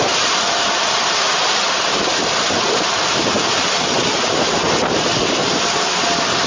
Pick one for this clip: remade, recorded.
recorded